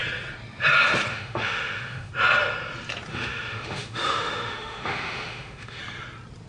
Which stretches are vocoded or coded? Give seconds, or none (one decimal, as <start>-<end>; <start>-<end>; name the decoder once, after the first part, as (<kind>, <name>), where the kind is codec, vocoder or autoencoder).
1.1-2.1 (autoencoder, DAC-VAE); 3.1-5.8